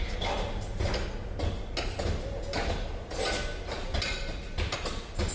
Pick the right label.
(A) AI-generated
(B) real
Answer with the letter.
B